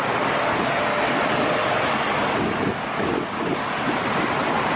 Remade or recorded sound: recorded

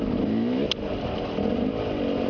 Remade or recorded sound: recorded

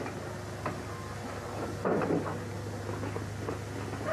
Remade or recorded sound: recorded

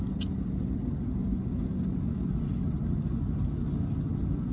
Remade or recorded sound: recorded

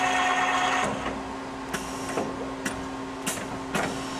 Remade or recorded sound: recorded